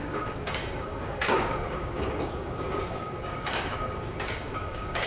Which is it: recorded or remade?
remade